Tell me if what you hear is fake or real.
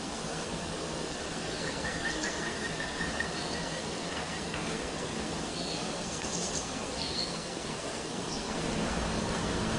fake